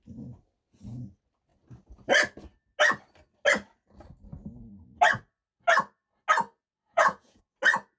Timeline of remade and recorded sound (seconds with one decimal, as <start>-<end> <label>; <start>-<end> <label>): 0.0-6.8 recorded; 6.8-7.4 remade; 7.4-8.0 recorded